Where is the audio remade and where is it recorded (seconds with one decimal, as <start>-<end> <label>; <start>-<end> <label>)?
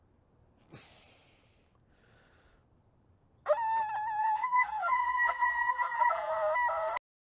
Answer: 0.0-4.2 recorded; 4.2-6.3 remade; 6.3-7.2 recorded